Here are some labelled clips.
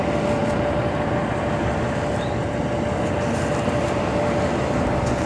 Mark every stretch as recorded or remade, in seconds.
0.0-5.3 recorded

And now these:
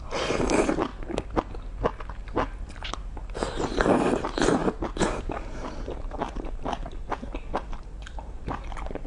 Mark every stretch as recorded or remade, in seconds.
0.0-0.9 remade; 0.9-2.6 recorded; 2.6-4.6 remade; 4.6-5.2 recorded; 5.2-9.1 remade

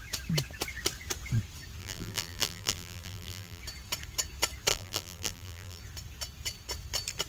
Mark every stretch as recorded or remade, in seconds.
0.0-1.8 recorded; 1.8-3.6 remade; 3.6-4.7 recorded; 4.7-5.8 remade; 5.8-7.3 recorded

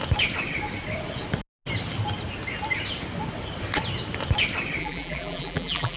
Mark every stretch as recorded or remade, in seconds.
0.0-4.8 recorded; 4.8-6.0 remade

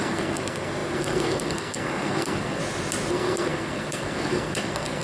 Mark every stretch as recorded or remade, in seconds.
0.0-2.6 remade; 2.6-3.1 recorded; 3.1-5.0 remade

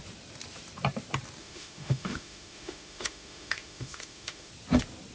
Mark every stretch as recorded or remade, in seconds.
0.0-1.4 recorded; 1.4-4.5 remade; 4.5-5.1 recorded